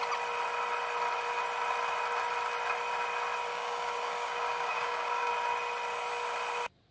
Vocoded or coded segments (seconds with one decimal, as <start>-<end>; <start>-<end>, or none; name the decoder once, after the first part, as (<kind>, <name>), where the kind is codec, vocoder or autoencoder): 3.5-5.3 (codec, DAC)